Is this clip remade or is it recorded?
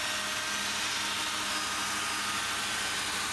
recorded